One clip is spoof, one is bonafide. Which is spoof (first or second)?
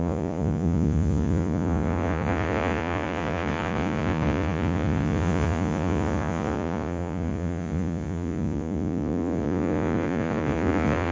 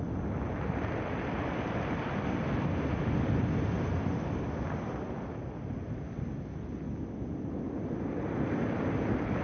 first